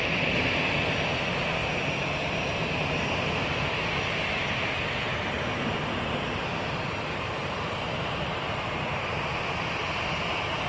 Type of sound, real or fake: fake